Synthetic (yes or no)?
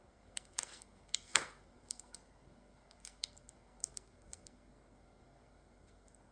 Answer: yes